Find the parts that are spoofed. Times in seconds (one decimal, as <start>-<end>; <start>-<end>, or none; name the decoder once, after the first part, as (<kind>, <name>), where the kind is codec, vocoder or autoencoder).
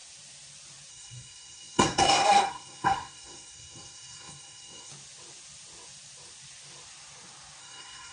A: 0.9-4.9 (codec, SNAC); 7.6-8.1